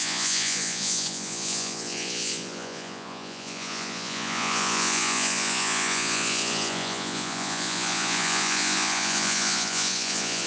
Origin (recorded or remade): remade